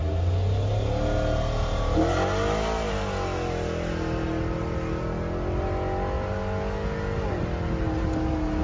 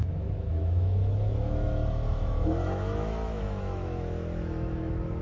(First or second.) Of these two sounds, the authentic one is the first